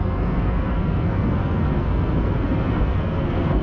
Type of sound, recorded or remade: remade